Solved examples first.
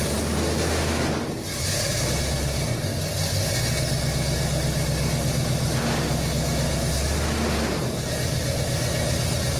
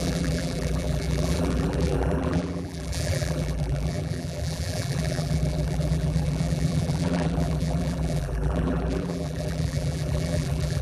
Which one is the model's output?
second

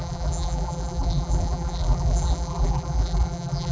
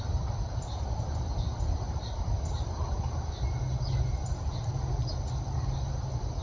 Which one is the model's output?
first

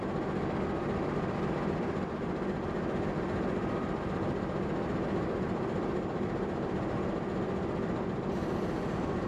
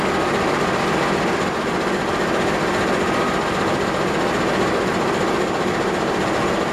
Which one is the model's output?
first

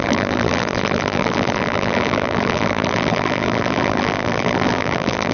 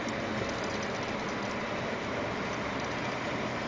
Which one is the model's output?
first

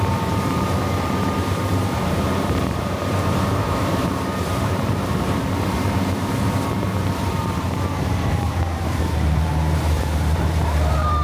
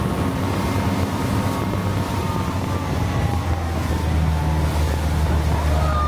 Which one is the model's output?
first